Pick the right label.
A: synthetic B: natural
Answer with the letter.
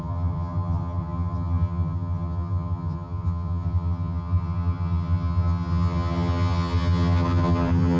A